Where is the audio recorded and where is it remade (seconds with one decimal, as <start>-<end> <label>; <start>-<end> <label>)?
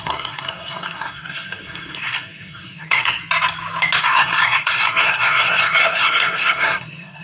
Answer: 0.0-3.2 remade; 3.2-4.0 recorded; 4.0-7.2 remade